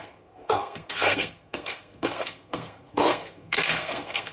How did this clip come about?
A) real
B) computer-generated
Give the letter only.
B